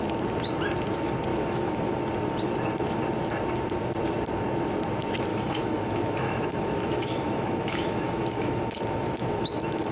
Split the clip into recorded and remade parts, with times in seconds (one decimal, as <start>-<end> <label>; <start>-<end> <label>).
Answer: 0.0-1.3 recorded; 1.3-2.0 remade; 2.0-5.3 recorded; 5.3-9.9 remade